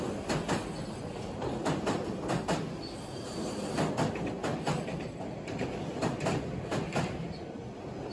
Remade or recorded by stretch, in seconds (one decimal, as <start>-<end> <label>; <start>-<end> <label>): 0.0-4.9 recorded; 4.9-6.4 remade; 6.4-8.1 recorded